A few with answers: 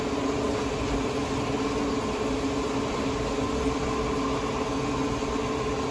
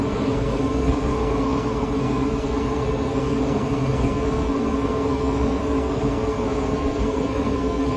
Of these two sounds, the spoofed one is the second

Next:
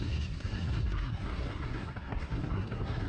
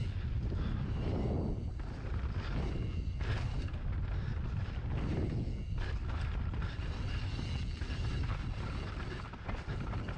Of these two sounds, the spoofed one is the first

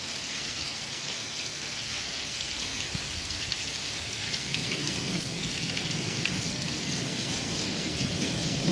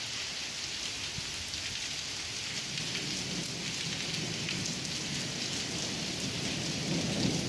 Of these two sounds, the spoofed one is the first